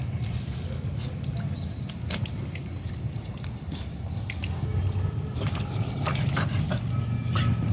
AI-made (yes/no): no